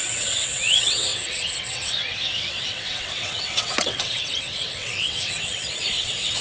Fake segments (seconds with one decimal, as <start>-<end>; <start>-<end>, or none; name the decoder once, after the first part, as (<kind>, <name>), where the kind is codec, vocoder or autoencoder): 0.0-6.4 (vocoder, WaveNeXt)